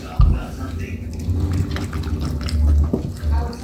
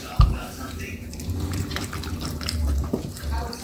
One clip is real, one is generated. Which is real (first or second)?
first